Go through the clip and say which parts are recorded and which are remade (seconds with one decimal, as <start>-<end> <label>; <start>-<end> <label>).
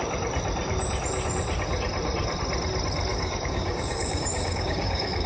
0.0-3.1 recorded; 3.1-5.3 remade